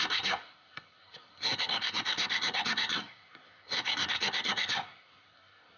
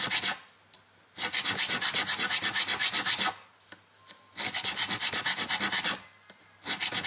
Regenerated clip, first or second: first